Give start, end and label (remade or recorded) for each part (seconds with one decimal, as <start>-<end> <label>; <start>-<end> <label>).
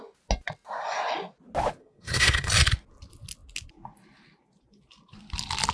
0.0-1.8 recorded; 1.8-2.5 remade; 2.5-5.7 recorded